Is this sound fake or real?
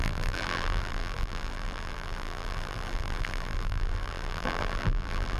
fake